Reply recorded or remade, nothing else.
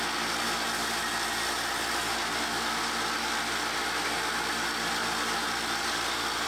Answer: recorded